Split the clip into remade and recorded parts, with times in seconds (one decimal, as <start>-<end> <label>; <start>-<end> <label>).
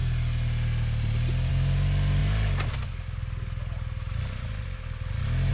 0.0-1.5 recorded; 1.5-2.2 remade; 2.2-5.5 recorded